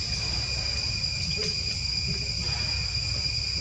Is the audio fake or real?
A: real